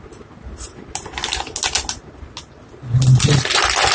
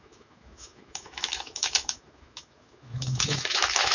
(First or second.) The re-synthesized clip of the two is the second